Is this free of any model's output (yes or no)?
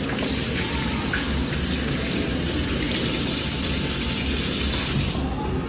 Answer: yes